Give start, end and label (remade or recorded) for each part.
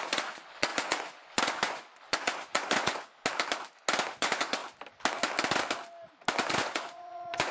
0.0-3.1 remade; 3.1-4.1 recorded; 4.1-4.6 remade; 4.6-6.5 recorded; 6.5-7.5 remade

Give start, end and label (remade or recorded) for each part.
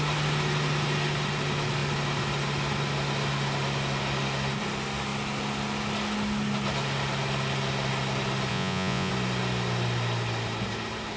0.0-8.5 recorded; 8.5-9.1 remade; 9.1-11.2 recorded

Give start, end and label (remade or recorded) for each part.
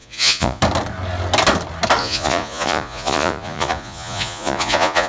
0.0-0.6 remade; 0.6-2.0 recorded; 2.0-5.1 remade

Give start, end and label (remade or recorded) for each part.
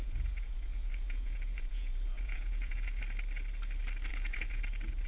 0.0-3.0 remade; 3.0-4.1 recorded; 4.1-4.6 remade; 4.6-5.1 recorded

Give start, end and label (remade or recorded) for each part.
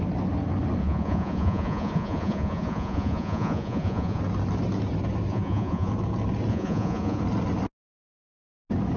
0.0-0.8 recorded; 0.8-4.2 remade; 4.2-5.3 recorded; 5.3-5.9 remade; 5.9-6.5 recorded; 6.5-7.2 remade; 7.2-9.0 recorded